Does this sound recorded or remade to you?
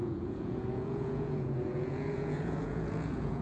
remade